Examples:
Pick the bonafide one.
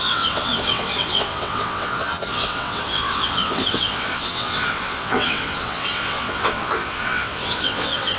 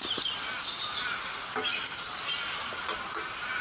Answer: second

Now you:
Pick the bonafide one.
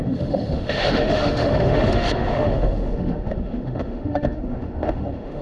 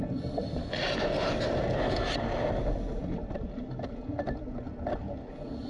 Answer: second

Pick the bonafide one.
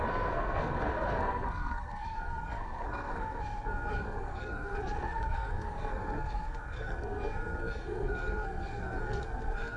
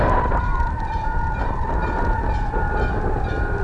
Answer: second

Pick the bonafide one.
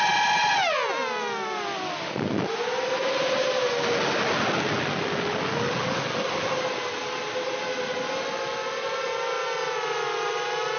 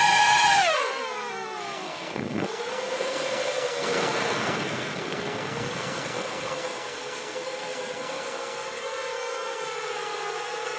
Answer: first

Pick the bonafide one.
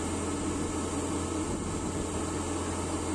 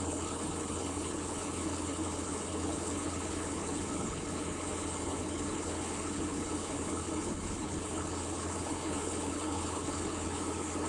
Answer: first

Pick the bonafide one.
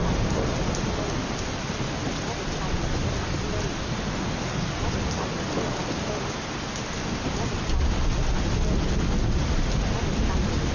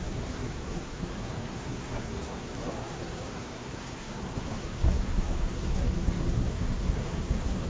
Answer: first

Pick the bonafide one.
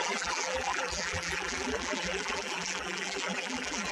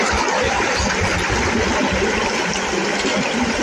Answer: second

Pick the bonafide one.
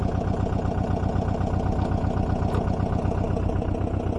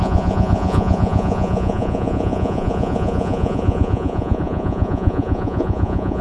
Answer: first